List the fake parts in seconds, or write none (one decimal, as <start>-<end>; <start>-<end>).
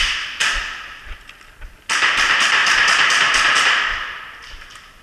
none